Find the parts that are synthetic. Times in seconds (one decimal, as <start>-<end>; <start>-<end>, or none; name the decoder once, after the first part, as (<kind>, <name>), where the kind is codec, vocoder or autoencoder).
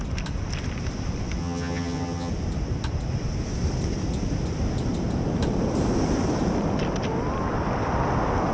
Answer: 1.4-2.3 (vocoder, HiFi-GAN)